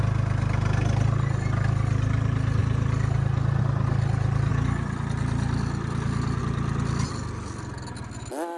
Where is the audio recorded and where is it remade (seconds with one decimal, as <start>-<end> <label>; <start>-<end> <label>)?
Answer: 0.0-8.6 recorded